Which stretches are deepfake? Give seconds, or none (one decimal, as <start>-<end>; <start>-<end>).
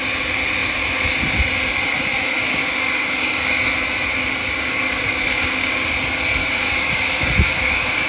2.5-3.6; 4.4-5.7; 6.4-8.1